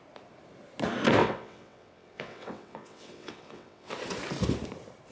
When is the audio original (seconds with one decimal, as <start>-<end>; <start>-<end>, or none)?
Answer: 0.0-1.2; 3.9-5.1